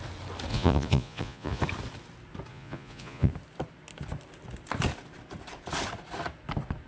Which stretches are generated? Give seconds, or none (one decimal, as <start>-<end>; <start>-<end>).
0.5-1.6; 2.5-3.3